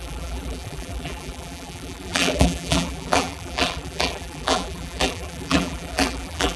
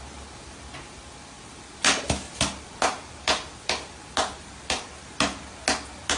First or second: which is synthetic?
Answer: first